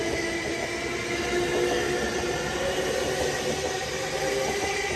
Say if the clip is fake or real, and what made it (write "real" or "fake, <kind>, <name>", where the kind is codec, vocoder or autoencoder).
real